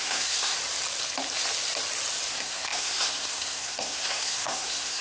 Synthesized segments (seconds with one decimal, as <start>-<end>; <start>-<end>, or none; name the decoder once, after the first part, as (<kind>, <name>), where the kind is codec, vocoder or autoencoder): 0.0-0.6 (codec, SNAC); 2.3-5.0

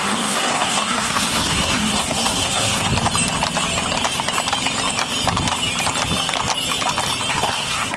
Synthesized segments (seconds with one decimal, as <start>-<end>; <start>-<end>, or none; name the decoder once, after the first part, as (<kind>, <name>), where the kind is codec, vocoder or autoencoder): 0.0-2.9 (codec, SNAC); 7.3-8.0

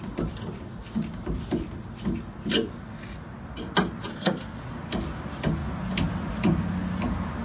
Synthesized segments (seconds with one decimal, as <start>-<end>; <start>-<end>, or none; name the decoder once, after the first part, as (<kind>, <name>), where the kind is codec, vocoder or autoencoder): 4.1-4.6 (codec, SNAC)

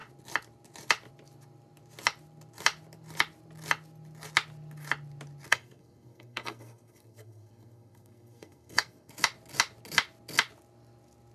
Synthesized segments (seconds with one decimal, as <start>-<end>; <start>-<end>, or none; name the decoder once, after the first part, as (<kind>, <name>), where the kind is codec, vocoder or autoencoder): 5.5-9.1 (codec, SNAC)

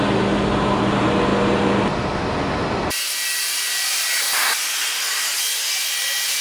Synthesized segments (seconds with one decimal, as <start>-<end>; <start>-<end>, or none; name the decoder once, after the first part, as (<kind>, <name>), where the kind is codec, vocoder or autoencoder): none